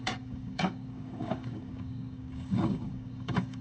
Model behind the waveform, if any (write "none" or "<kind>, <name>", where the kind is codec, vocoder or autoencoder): codec, DAC